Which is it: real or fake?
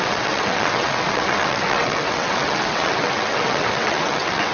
fake